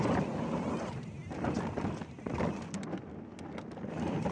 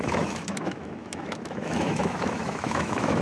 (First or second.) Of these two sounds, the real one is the first